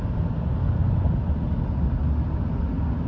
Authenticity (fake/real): real